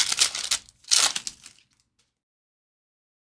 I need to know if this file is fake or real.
real